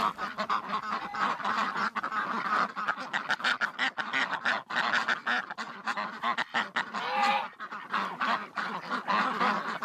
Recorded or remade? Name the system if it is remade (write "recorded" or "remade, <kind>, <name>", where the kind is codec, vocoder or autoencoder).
recorded